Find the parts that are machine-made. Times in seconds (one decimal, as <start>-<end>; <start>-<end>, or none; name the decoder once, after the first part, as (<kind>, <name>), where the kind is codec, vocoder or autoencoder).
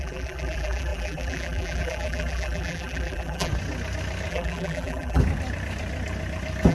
0.0-3.5 (vocoder, BigVGAN v2); 4.3-5.2